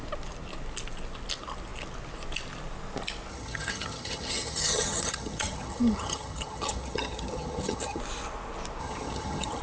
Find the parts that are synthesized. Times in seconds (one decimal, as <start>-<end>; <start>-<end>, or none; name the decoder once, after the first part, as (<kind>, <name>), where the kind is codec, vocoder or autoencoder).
3.3-8.0 (vocoder, HiFi-GAN); 8.8-9.6